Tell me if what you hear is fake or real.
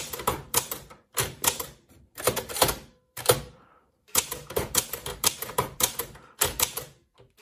fake